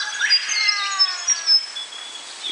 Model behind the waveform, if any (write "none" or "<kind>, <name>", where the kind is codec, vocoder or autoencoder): none